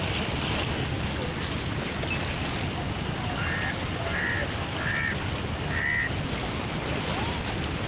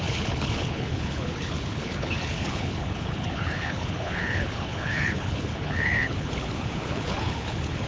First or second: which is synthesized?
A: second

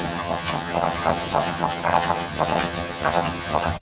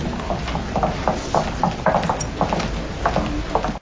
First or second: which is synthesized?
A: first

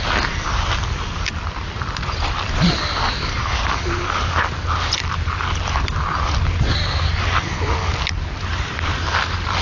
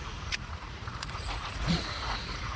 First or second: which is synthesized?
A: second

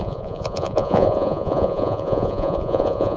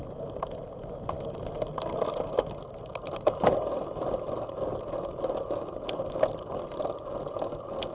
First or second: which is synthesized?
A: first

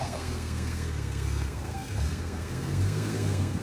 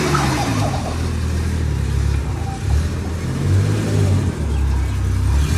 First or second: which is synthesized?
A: first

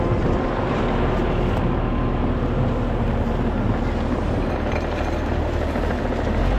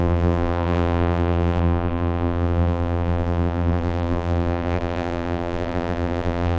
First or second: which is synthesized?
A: second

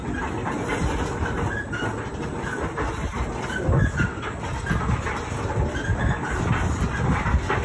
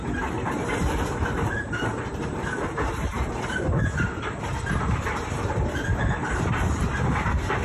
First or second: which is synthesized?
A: second